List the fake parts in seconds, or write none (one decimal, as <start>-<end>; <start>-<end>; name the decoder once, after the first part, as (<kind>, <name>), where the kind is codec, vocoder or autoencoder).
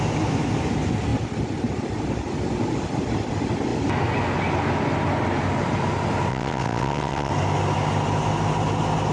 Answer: 6.3-7.3 (vocoder, WaveNeXt)